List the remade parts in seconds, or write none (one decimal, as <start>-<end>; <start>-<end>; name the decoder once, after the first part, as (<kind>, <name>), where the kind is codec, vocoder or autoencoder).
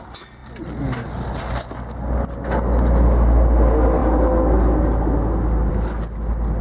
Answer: none